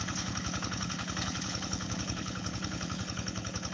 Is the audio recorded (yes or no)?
no